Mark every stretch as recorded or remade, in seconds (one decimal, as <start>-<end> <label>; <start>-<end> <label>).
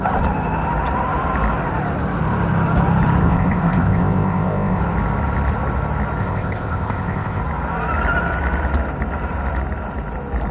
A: 0.0-3.2 recorded; 3.2-4.8 remade; 4.8-6.2 recorded; 6.2-7.4 remade; 7.4-10.5 recorded